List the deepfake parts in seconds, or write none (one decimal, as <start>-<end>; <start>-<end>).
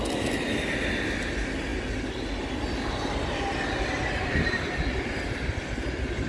none